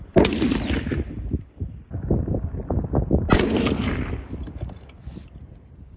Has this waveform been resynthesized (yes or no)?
no